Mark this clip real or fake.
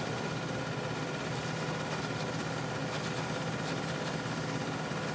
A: real